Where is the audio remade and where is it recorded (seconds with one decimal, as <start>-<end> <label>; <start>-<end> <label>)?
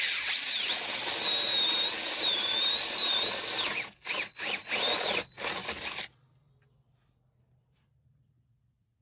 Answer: 0.0-9.0 recorded